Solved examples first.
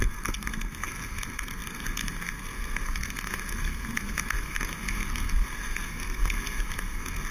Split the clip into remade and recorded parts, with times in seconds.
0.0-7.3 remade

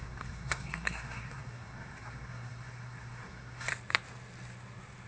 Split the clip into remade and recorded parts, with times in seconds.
0.0-3.7 remade; 3.7-5.1 recorded

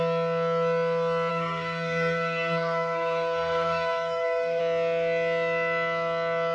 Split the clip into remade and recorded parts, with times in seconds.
0.0-1.3 recorded; 1.3-4.6 remade; 4.6-6.5 recorded

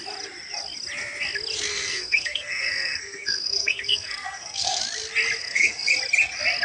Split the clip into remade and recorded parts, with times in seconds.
0.0-1.7 recorded; 1.7-4.8 remade; 4.8-5.4 recorded; 5.4-5.9 remade; 5.9-6.6 recorded

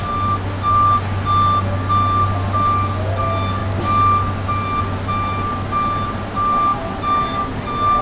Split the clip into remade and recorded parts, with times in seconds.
0.0-8.0 recorded

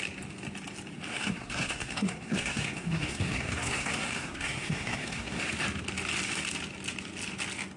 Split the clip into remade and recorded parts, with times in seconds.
0.0-1.1 recorded; 1.1-5.4 remade; 5.4-7.8 recorded

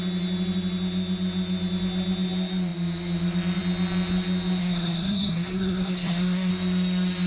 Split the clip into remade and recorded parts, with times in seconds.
0.0-4.6 recorded; 4.6-6.5 remade; 6.5-7.3 recorded